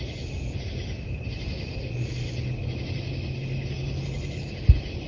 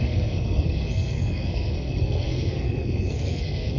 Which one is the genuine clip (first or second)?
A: first